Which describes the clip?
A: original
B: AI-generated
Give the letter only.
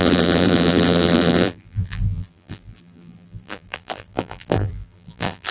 B